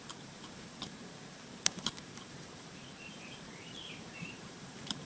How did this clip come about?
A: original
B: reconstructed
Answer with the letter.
B